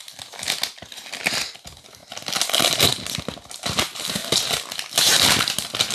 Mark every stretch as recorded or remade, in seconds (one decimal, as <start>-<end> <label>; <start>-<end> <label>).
0.0-5.9 recorded